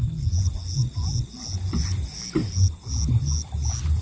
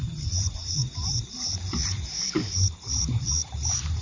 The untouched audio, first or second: first